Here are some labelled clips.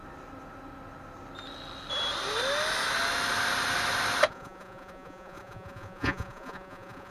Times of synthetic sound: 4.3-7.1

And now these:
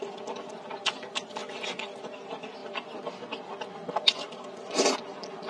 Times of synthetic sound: none

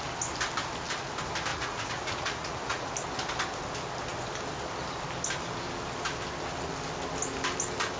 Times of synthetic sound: 1.5-2.9